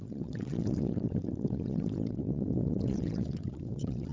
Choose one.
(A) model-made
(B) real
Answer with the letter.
A